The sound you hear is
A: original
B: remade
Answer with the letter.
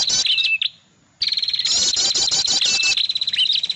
A